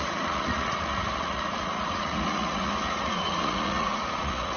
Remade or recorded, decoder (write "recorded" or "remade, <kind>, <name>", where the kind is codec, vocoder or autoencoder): remade, vocoder, Vocos